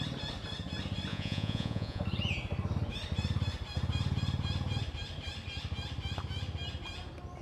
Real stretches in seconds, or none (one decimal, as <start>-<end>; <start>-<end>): 0.0-1.1; 2.0-7.4